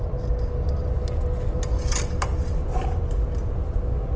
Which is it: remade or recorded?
recorded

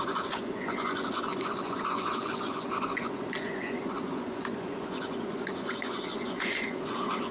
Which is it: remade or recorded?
remade